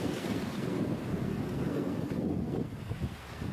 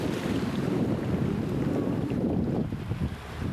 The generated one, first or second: first